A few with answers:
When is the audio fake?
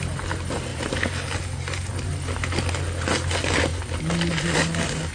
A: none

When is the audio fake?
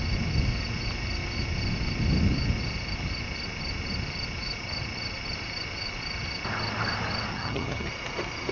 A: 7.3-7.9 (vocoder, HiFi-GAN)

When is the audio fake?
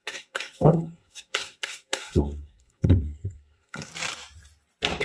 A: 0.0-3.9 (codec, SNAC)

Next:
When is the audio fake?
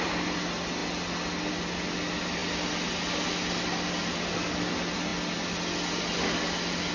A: none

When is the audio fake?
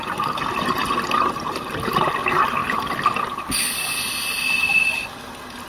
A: 2.6-3.2 (vocoder, BigVGAN v2)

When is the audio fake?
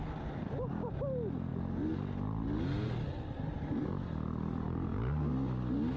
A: none